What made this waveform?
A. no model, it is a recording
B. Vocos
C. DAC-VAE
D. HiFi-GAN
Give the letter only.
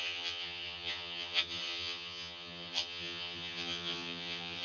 D